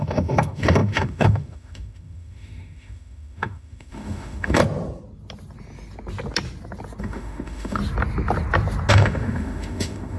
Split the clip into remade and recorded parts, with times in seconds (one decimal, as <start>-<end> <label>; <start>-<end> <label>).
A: 0.0-4.6 remade; 4.6-7.0 recorded; 7.0-7.8 remade; 7.8-8.9 recorded; 8.9-10.2 remade